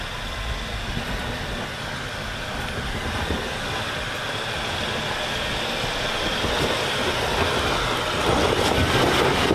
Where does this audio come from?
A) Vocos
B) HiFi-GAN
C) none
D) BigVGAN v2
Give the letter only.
C